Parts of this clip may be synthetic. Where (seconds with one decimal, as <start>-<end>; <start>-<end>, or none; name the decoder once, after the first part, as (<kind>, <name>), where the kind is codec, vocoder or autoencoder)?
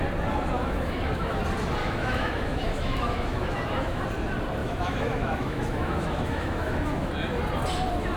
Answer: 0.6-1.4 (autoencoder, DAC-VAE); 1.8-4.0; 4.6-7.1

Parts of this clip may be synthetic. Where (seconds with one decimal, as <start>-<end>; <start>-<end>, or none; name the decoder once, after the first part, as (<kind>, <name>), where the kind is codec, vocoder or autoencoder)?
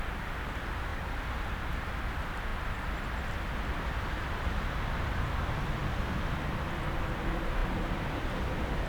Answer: none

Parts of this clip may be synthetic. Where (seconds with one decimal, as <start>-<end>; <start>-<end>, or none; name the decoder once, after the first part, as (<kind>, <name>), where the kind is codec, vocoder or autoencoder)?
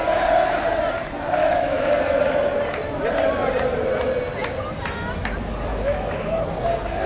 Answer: 1.4-1.9 (autoencoder, DAC-VAE); 5.7-6.4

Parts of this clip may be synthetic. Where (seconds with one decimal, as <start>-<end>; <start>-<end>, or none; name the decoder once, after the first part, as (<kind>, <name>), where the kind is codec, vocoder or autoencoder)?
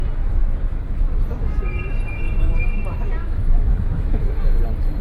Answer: 3.2-4.3 (autoencoder, DAC-VAE)